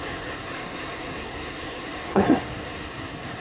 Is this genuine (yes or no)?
no